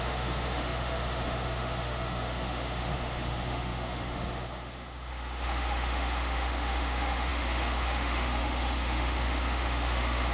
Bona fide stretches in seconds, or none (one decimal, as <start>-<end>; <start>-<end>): none